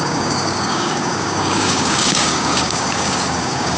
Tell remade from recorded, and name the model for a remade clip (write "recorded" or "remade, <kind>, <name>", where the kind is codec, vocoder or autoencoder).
remade, codec, DAC